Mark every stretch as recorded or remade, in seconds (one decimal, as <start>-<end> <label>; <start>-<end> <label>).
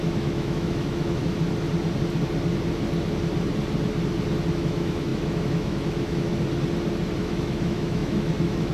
0.0-1.2 remade; 1.2-4.5 recorded; 4.5-6.3 remade; 6.3-7.2 recorded; 7.2-8.7 remade